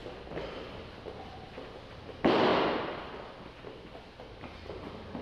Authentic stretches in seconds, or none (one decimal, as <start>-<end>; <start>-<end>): 0.0-1.9; 2.5-4.3